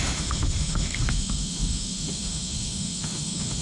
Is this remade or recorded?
remade